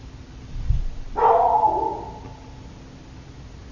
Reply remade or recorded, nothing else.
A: recorded